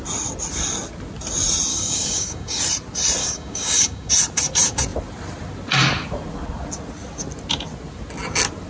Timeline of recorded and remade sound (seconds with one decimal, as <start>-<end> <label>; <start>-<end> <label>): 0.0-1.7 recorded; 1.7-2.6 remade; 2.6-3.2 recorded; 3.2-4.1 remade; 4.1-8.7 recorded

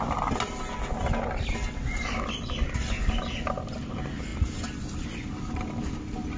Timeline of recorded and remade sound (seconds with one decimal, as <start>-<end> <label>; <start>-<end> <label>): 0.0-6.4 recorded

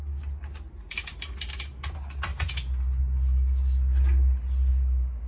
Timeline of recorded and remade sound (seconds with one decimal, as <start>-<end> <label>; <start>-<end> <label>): 0.0-4.7 recorded; 4.7-5.3 remade

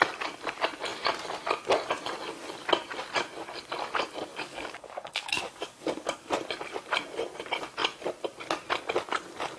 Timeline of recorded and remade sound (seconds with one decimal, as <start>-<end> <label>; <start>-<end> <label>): 0.0-4.3 recorded; 4.3-6.3 remade; 6.3-9.6 recorded

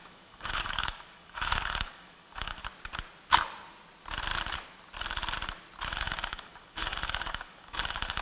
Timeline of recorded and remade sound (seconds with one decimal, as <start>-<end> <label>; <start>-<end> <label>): 0.0-2.6 remade; 2.6-6.0 recorded; 6.0-8.2 remade